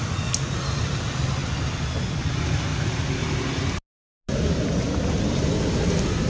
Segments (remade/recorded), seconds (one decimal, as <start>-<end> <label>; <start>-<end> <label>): 0.0-6.3 recorded